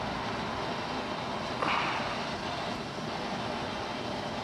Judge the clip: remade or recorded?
recorded